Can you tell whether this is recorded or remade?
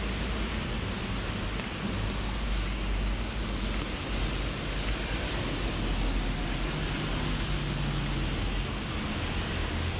recorded